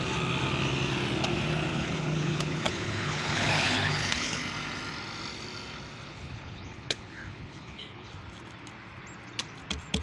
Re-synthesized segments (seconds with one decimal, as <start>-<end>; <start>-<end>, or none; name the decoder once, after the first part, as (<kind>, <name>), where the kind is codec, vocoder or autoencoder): 1.7-4.4 (codec, HILCodec); 6.1-8.1